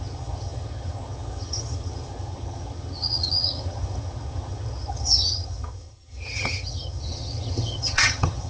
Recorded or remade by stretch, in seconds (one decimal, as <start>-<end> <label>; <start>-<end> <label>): 0.0-8.5 remade